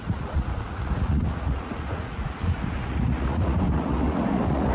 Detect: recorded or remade remade